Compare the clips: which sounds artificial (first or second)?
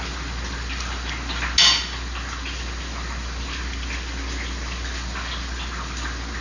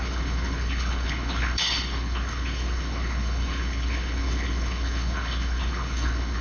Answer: second